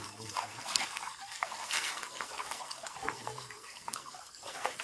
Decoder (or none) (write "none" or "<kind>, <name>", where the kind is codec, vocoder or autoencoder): codec, SNAC